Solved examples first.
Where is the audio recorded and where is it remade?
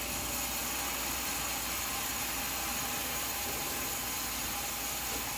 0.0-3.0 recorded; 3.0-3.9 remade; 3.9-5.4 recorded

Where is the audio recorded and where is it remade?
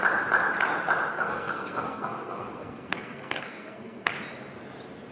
0.0-1.1 recorded; 1.1-4.1 remade; 4.1-5.1 recorded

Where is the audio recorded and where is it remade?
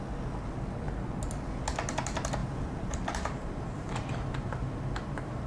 0.0-2.4 recorded; 2.4-5.5 remade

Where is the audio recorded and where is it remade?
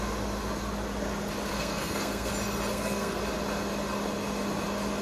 0.0-1.5 recorded; 1.5-2.3 remade; 2.3-2.7 recorded; 2.7-3.2 remade; 3.2-5.0 recorded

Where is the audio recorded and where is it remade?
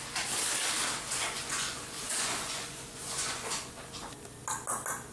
0.0-1.1 recorded; 1.1-4.0 remade; 4.0-5.1 recorded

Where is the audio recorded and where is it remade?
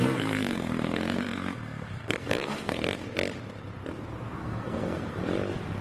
0.0-3.0 remade; 3.0-4.4 recorded; 4.4-5.2 remade; 5.2-5.8 recorded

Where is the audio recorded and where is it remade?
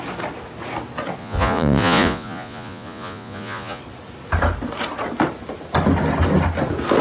0.0-1.2 recorded; 1.2-3.8 remade; 3.8-7.0 recorded